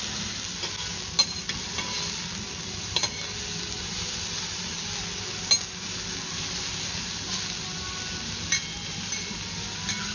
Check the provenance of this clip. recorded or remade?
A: recorded